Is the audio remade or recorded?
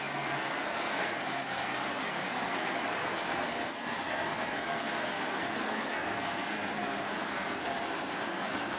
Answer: remade